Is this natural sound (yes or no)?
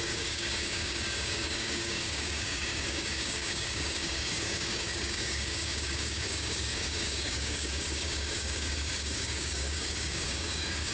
no